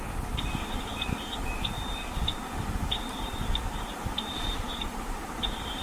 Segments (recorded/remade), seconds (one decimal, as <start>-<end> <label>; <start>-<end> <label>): 0.0-2.3 recorded; 2.3-5.8 remade